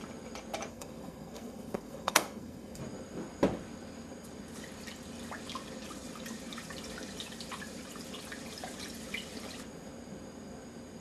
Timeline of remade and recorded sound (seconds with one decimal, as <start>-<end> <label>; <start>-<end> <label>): 0.0-0.7 recorded; 0.7-2.8 remade; 2.8-11.0 recorded